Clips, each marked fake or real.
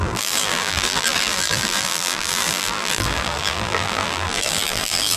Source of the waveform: fake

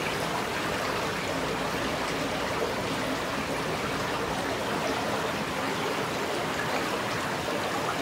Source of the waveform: real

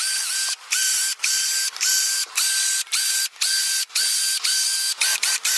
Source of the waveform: real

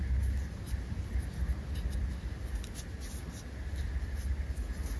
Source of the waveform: real